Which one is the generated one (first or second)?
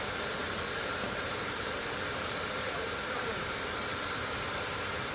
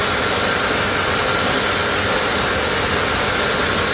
first